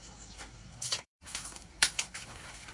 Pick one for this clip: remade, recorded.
remade